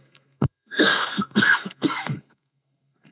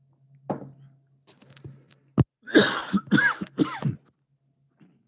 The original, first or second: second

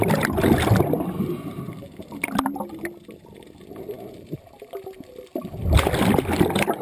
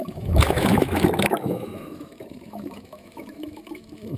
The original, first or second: first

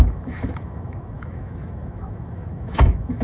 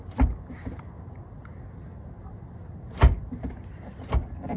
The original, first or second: second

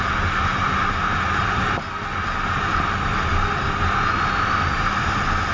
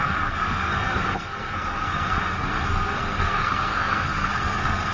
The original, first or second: first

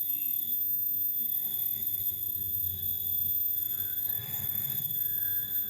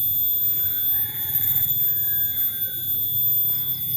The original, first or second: second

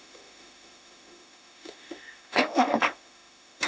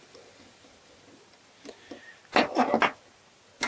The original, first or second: second